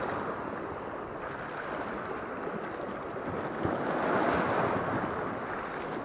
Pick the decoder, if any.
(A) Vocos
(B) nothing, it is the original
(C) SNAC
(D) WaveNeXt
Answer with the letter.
B